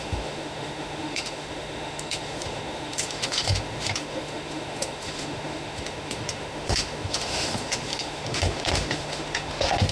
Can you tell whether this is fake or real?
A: fake